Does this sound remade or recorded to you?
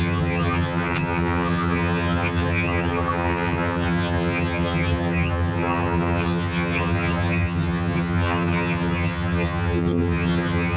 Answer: remade